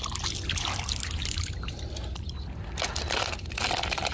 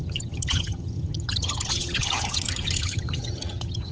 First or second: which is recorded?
first